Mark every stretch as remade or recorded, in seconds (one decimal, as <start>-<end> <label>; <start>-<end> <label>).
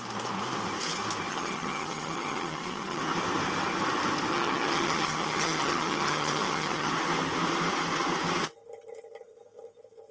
0.0-1.3 recorded; 1.3-3.0 remade; 3.0-4.3 recorded; 4.3-6.9 remade; 6.9-10.1 recorded